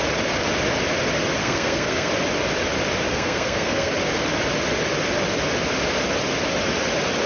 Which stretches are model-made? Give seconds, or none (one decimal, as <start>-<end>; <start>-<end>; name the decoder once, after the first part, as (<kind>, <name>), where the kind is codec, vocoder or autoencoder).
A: 1.4-2.1 (codec, SNAC); 3.1-3.9